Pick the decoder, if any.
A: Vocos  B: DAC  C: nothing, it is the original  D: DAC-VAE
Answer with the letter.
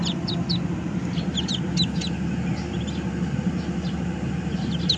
C